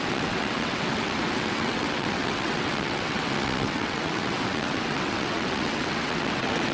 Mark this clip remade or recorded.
remade